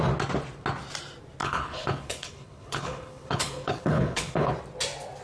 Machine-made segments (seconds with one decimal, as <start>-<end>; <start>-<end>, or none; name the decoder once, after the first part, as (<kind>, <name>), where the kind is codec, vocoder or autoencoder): 1.4-4.5 (codec, HILCodec)

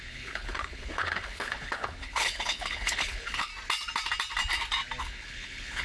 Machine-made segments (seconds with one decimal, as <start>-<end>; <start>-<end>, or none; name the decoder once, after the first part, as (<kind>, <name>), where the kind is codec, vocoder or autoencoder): 0.0-3.5 (codec, HILCodec); 5.0-5.8

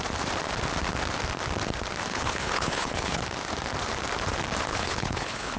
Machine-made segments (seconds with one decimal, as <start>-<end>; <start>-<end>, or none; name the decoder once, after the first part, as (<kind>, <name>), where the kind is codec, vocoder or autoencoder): 2.1-3.2 (codec, HILCodec); 4.7-5.6

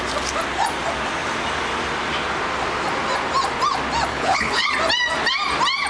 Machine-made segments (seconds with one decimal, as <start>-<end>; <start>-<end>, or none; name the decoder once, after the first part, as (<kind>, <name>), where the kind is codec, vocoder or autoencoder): 4.1-4.7 (codec, HILCodec)

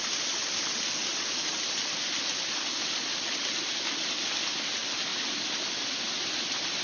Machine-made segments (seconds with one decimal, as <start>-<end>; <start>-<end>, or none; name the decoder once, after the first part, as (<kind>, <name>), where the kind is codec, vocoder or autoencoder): none